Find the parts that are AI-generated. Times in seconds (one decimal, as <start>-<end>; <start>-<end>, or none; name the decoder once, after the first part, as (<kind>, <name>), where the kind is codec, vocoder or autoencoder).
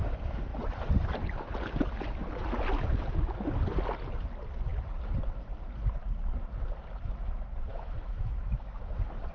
7.7-8.8 (autoencoder, DAC-VAE)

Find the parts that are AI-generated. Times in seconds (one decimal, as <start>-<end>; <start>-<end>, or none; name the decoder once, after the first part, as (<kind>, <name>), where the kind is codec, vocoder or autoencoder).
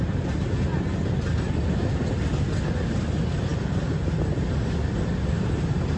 none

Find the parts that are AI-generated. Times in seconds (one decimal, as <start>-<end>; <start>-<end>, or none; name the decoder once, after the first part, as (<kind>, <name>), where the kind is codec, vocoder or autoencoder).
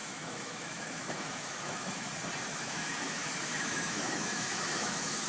0.0-2.1 (autoencoder, DAC-VAE); 2.5-5.3